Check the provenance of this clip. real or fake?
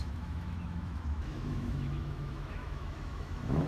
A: fake